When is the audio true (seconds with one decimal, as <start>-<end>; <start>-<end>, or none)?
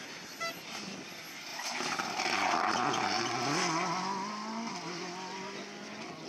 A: 0.0-6.3